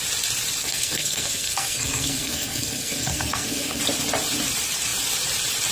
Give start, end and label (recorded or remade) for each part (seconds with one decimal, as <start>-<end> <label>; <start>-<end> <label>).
0.0-0.6 recorded; 0.6-3.8 remade; 3.8-5.7 recorded